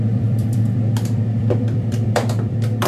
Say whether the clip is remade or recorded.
remade